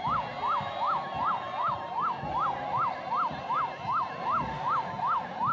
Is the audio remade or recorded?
recorded